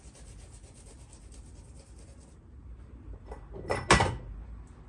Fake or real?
real